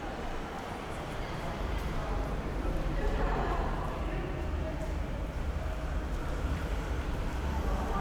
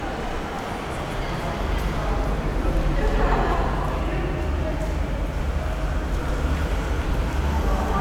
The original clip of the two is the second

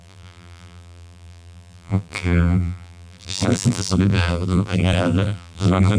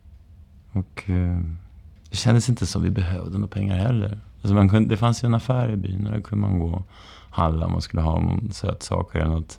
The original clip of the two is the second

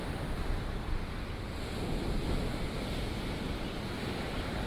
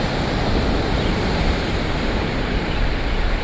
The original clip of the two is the first